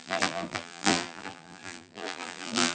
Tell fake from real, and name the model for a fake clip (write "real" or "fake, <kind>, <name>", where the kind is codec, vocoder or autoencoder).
fake, vocoder, BigVGAN v2